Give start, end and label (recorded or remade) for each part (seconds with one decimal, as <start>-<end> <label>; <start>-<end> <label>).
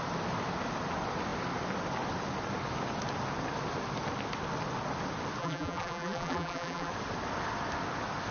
0.0-5.4 recorded; 5.4-6.9 remade; 6.9-8.3 recorded